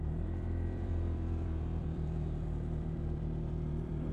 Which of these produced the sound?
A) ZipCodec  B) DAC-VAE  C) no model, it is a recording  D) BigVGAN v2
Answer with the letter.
D